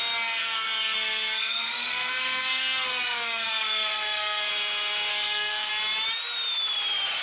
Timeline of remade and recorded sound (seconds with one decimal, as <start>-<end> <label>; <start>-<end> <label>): 0.0-0.4 recorded; 0.4-4.5 remade; 4.5-5.1 recorded; 5.1-5.7 remade; 5.7-7.2 recorded